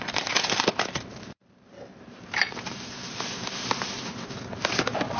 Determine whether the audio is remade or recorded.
remade